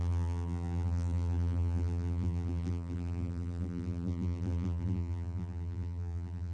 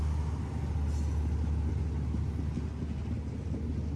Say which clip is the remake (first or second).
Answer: first